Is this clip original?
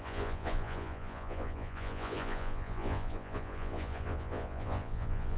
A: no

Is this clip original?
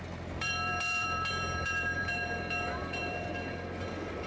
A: no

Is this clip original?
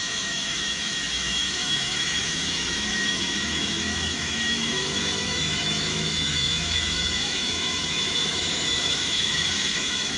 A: no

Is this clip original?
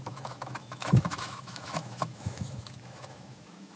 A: no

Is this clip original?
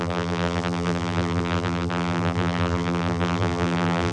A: no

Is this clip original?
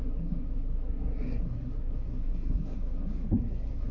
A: no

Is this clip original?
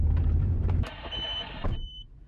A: no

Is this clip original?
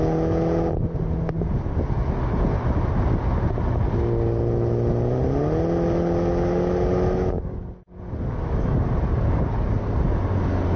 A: yes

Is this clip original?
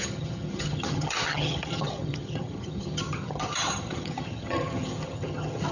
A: no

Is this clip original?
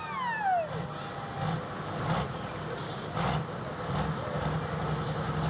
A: yes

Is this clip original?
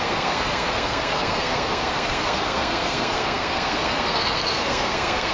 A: no